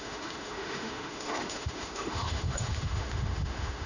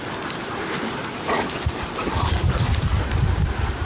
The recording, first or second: second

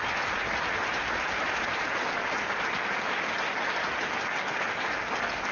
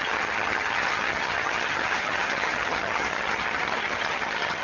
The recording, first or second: first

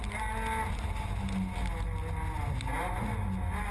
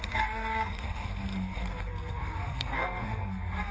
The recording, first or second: first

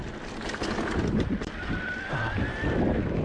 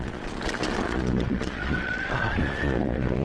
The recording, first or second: first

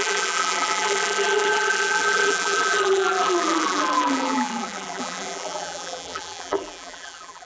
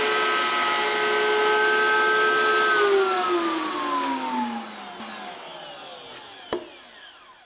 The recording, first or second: second